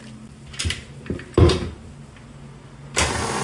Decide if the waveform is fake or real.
real